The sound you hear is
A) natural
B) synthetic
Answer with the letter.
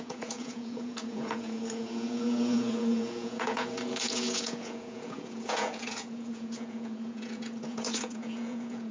B